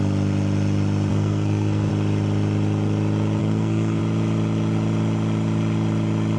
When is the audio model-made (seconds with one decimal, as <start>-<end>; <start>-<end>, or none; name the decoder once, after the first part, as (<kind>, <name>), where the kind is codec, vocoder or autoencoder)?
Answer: 1.1-1.9 (codec, SNAC); 3.4-4.0